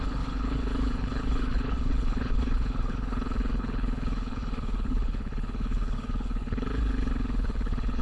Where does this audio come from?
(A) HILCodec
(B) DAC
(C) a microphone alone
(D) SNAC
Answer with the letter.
A